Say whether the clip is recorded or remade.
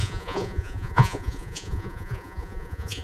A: remade